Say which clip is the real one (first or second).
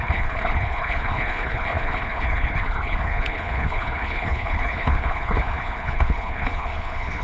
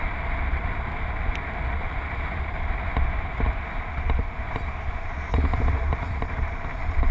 second